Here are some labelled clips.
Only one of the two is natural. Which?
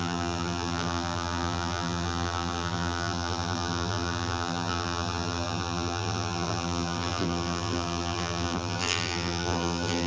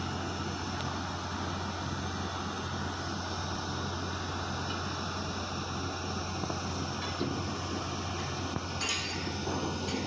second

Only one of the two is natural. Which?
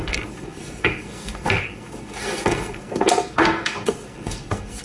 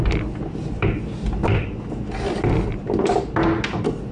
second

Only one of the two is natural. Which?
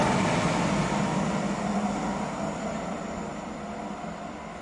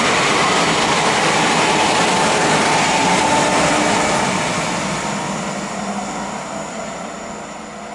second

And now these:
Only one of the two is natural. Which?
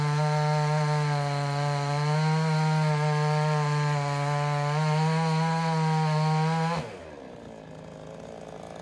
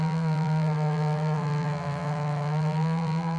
first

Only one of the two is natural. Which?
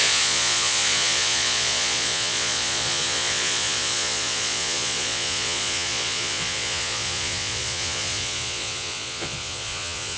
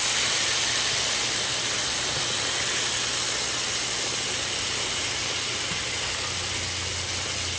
second